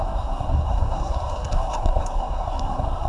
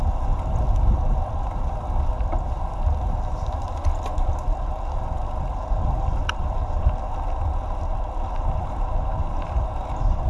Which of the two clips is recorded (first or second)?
second